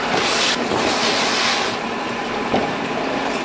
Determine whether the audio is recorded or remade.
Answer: remade